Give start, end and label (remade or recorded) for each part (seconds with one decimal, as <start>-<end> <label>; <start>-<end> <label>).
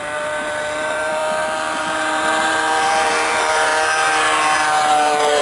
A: 0.0-1.2 remade; 1.2-1.8 recorded; 1.8-3.7 remade; 3.7-4.9 recorded; 4.9-5.4 remade